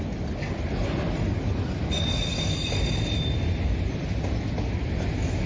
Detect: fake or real real